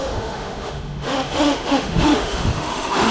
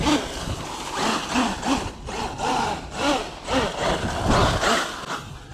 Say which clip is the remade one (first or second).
first